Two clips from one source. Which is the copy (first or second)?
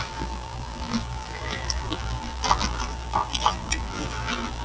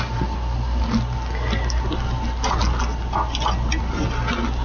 first